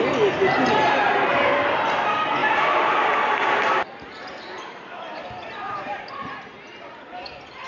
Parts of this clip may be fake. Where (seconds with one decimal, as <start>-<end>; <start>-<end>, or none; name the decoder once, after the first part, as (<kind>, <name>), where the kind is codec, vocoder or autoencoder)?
0.6-1.1 (vocoder, BigVGAN v2); 2.4-7.0